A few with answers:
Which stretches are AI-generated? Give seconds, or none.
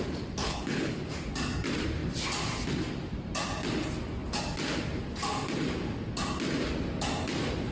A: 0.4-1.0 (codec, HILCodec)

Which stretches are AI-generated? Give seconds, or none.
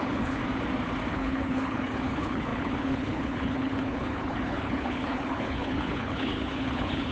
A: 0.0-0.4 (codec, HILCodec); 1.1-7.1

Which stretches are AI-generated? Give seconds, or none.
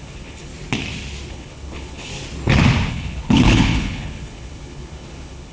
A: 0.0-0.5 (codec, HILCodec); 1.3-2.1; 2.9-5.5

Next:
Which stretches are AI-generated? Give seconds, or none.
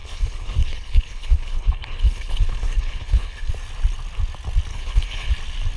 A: 0.0-3.5 (codec, HILCodec); 4.7-5.3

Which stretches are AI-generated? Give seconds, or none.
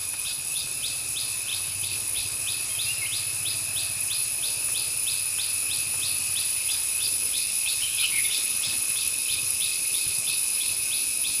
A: 0.0-0.7 (codec, HILCodec); 1.5-2.4; 6.6-10.8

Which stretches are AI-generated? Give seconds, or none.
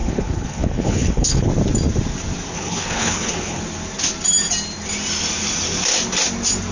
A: 0.0-1.5 (codec, HILCodec); 2.5-3.6